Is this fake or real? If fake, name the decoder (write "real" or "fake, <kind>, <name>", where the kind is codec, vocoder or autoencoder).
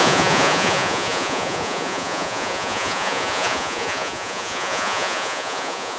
fake, vocoder, Vocos